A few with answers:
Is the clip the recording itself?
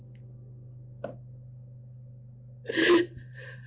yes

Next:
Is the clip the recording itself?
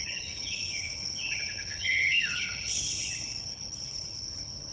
no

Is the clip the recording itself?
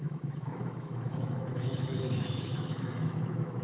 no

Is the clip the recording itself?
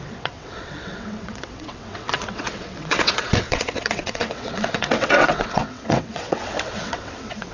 no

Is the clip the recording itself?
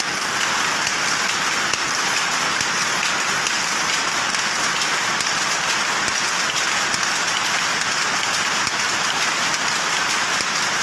yes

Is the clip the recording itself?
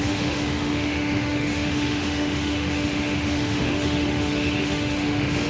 no